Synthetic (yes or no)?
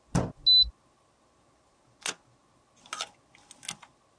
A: no